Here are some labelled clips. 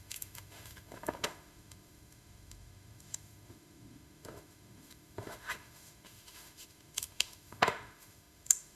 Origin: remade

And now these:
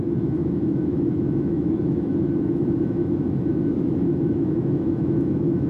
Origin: remade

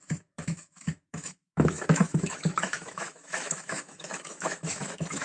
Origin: remade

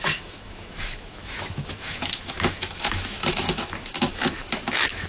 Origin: remade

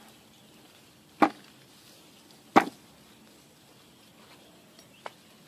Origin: recorded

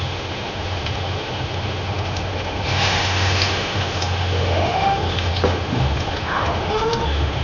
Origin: remade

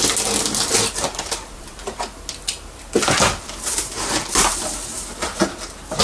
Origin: recorded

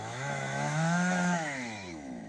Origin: remade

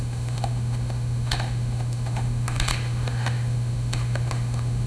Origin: remade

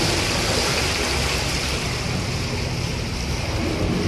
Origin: recorded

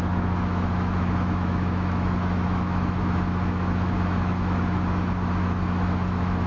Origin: remade